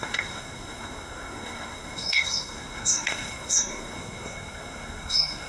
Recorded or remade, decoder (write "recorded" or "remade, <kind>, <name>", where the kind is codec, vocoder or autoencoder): remade, codec, SNAC